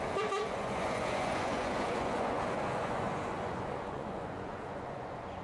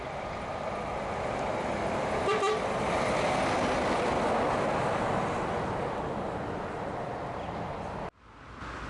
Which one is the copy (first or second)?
first